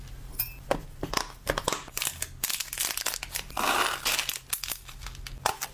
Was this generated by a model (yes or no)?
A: no